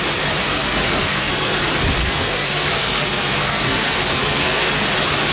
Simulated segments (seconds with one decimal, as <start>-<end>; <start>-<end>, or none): 0.4-1.6; 2.0-4.7